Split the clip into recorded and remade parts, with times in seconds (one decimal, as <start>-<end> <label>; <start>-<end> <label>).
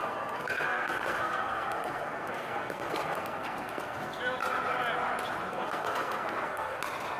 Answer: 0.0-4.2 remade; 4.2-5.5 recorded; 5.5-6.8 remade; 6.8-7.2 recorded